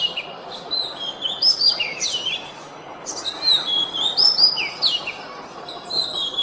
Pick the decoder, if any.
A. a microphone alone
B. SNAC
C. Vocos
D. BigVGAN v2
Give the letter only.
A